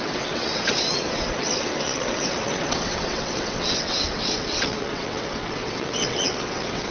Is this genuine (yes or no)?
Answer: no